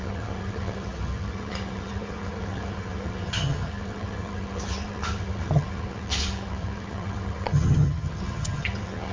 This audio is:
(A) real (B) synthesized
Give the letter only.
B